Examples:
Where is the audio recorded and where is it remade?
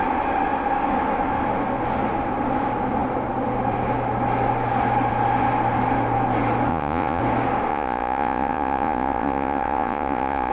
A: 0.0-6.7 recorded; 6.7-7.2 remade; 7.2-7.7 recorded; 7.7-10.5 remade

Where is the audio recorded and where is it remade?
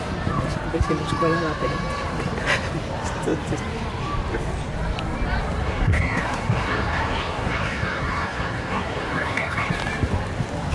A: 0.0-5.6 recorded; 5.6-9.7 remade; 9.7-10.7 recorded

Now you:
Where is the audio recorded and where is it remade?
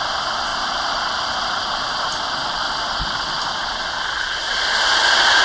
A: 0.0-5.4 recorded